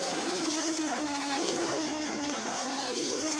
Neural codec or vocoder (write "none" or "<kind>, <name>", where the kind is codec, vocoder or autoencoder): codec, SNAC